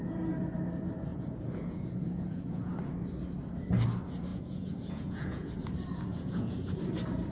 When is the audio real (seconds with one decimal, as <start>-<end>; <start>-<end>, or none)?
0.0-1.1; 2.7-4.3; 5.5-6.1; 6.8-7.3